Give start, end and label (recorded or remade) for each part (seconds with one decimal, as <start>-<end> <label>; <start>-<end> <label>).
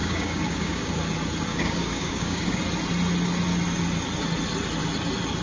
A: 0.0-0.9 remade; 0.9-1.5 recorded; 1.5-2.6 remade; 2.6-5.4 recorded